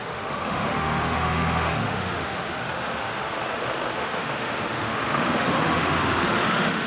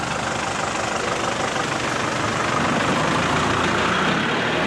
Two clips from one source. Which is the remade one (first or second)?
first